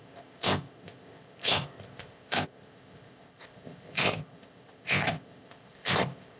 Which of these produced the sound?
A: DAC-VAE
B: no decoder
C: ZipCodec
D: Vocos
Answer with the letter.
C